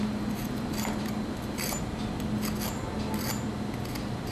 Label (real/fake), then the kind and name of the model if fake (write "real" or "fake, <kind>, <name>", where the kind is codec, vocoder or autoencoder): real